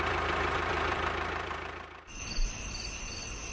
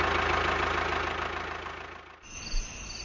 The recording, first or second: second